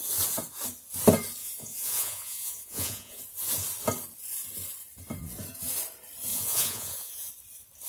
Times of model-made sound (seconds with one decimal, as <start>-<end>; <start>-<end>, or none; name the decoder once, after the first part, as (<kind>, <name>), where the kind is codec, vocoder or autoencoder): 1.4-3.2 (vocoder, Vocos); 6.3-7.3